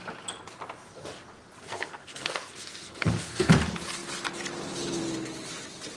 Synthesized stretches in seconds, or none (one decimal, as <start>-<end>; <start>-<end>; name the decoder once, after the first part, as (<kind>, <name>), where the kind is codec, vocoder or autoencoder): 1.6-3.5 (codec, SNAC)